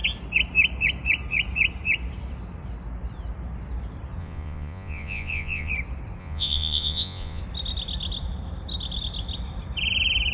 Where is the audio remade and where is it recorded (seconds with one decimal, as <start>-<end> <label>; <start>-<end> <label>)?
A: 0.0-4.2 recorded; 4.2-5.7 remade; 5.7-6.2 recorded; 6.2-7.4 remade; 7.4-10.3 recorded